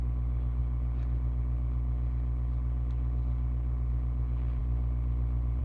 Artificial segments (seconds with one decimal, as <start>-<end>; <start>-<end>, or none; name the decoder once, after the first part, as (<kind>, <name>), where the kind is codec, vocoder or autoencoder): none